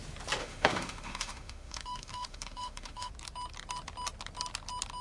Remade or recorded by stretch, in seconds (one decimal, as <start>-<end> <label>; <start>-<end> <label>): 0.0-0.4 recorded; 0.4-3.1 remade; 3.1-5.0 recorded